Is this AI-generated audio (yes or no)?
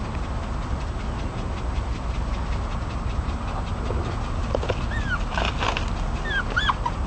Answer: no